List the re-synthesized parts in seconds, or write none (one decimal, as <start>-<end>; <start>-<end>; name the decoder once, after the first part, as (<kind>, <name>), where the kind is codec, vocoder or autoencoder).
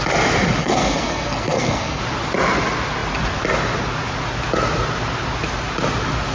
0.6-2.0 (codec, SNAC)